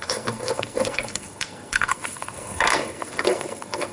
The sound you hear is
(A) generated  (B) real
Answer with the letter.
A